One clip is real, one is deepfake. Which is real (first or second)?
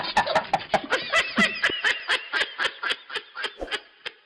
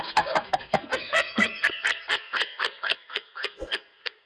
first